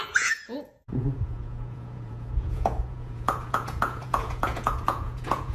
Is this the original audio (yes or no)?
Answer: no